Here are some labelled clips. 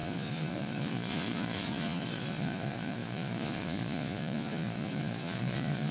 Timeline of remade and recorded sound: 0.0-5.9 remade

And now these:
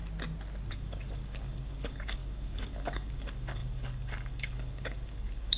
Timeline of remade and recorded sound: 0.0-0.7 recorded; 0.7-5.6 remade

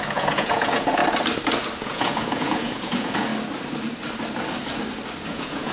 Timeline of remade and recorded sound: 0.0-1.0 remade; 1.0-1.8 recorded; 1.8-3.3 remade; 3.3-5.3 recorded; 5.3-5.7 remade

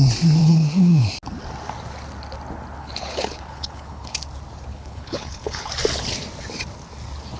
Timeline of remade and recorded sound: 0.0-0.4 recorded; 0.4-1.1 remade; 1.1-2.8 recorded; 2.8-4.2 remade; 4.2-4.7 recorded; 4.7-5.7 remade; 5.7-7.4 recorded

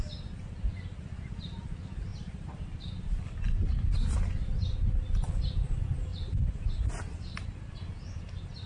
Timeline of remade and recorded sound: 0.0-2.1 recorded; 2.1-2.8 remade; 2.8-6.1 recorded; 6.1-6.7 remade; 6.7-8.7 recorded

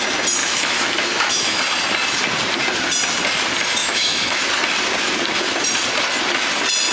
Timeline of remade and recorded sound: 0.0-0.4 recorded; 0.4-1.6 remade; 1.6-3.8 recorded; 3.8-4.4 remade; 4.4-6.9 recorded